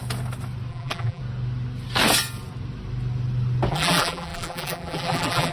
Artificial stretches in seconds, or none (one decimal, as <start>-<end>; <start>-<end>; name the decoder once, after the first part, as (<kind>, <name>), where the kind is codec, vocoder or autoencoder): 0.7-1.2 (vocoder, BigVGAN v2); 3.7-5.5